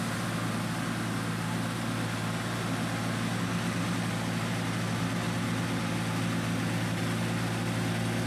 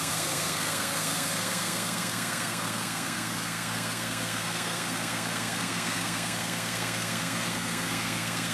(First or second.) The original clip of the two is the first